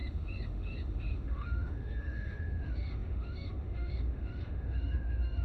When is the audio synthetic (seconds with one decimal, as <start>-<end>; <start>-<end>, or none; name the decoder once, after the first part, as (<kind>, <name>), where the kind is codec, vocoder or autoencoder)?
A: 0.0-5.4 (autoencoder, DAC-VAE)